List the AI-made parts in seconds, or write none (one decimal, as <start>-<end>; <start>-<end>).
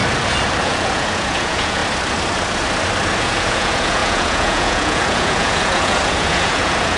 0.6-1.8; 3.2-7.0